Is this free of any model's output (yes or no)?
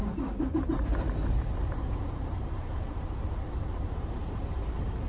no